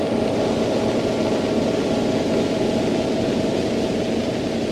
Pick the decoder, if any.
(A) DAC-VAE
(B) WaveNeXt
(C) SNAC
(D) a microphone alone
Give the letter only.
D